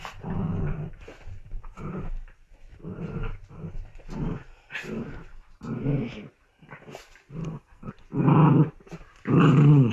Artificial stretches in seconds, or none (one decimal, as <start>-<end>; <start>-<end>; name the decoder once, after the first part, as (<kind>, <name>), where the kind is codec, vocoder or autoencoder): 7.4-7.9 (codec, SNAC)